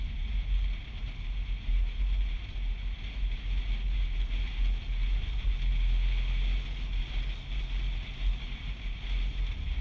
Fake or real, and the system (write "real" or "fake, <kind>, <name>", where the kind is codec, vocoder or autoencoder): real